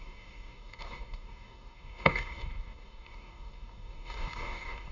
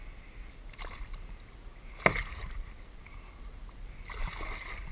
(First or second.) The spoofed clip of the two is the first